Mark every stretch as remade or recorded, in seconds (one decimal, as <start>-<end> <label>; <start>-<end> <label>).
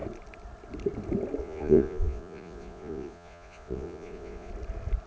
0.0-1.4 recorded; 1.4-4.5 remade; 4.5-5.1 recorded